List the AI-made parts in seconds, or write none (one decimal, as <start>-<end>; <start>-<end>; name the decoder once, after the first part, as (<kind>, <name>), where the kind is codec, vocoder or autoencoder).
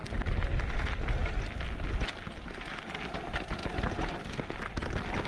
none